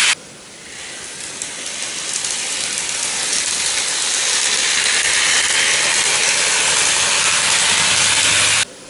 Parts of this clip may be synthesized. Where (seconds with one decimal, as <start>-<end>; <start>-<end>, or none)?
none